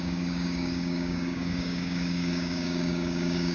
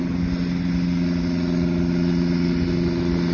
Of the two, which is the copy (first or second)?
first